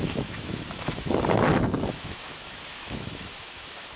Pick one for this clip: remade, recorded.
remade